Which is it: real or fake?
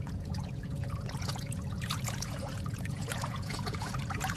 fake